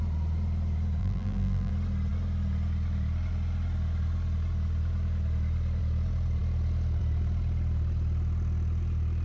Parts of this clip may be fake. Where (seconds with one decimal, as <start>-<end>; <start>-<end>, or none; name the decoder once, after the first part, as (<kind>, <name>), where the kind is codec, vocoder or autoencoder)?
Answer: 1.0-1.7 (vocoder, BigVGAN v2)